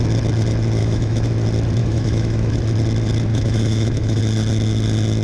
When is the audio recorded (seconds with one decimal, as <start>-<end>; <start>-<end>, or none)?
0.0-0.8; 1.3-1.8; 2.6-3.3; 4.2-5.2

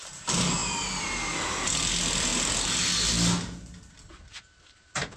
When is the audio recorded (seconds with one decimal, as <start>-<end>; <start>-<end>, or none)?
0.6-1.8; 2.3-3.9